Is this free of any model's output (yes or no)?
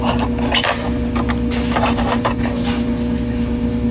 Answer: yes